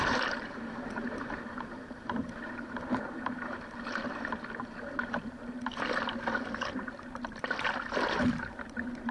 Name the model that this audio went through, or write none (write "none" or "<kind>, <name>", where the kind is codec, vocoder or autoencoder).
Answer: vocoder, BigVGAN v2